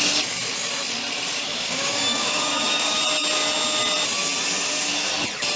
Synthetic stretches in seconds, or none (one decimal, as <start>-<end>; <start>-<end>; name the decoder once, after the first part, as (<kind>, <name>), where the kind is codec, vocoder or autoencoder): 1.5-3.0 (codec, DAC)